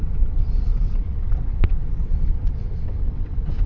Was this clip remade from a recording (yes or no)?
yes